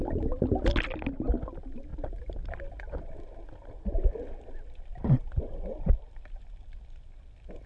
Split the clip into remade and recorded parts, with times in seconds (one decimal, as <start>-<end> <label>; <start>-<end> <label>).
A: 0.0-7.7 recorded

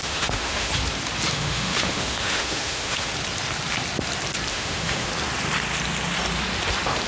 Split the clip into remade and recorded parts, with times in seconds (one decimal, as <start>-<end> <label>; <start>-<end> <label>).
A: 0.0-0.7 remade; 0.7-1.3 recorded; 1.3-3.1 remade; 3.1-4.5 recorded; 4.5-5.1 remade; 5.1-7.1 recorded

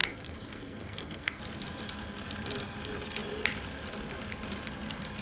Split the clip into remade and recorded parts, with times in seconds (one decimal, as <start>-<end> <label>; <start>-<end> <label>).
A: 0.0-1.4 remade; 1.4-5.2 recorded

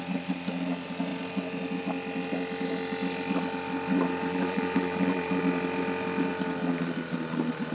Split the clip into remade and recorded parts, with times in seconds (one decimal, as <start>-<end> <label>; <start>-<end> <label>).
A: 0.0-4.3 recorded; 4.3-5.4 remade; 5.4-7.7 recorded